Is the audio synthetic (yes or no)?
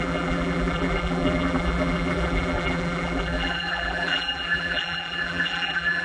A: yes